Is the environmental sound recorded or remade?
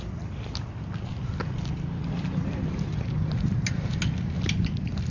recorded